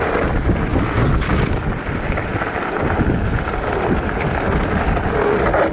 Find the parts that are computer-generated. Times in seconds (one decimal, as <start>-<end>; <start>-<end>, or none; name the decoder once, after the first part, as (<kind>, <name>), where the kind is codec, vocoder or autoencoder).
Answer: 0.0-0.7 (vocoder, BigVGAN v2); 1.6-2.3; 5.1-5.7